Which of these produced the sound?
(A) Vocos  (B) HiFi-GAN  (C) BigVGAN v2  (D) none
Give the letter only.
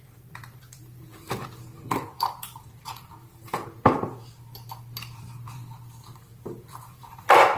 C